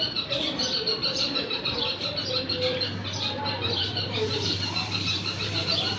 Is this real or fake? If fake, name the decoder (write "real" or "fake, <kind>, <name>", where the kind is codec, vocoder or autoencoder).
fake, vocoder, BigVGAN v2